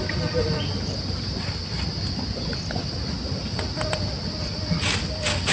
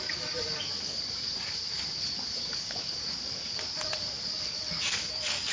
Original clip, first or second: first